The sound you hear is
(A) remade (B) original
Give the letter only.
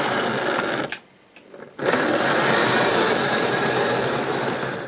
B